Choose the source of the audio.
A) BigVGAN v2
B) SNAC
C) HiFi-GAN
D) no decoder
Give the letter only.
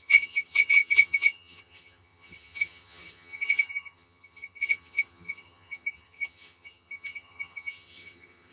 C